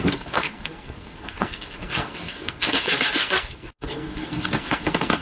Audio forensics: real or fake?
fake